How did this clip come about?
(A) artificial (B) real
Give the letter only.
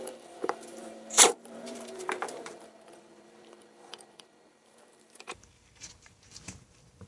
A